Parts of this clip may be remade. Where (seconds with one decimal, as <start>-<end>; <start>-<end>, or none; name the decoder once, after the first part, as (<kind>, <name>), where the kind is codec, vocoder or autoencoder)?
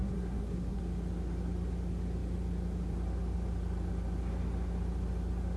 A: 0.0-0.8 (codec, SNAC)